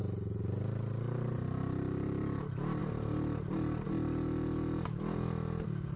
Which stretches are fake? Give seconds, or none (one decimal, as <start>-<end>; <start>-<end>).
none